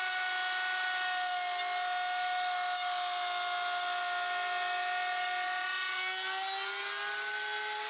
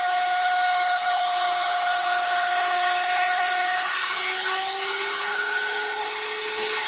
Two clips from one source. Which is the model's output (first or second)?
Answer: second